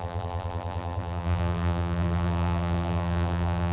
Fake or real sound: fake